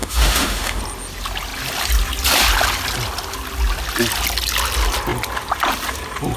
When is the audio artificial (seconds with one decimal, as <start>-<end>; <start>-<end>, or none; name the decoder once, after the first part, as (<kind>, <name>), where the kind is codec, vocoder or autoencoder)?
0.0-0.8 (autoencoder, DAC-VAE)